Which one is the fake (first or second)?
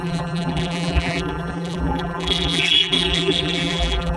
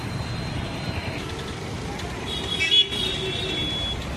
first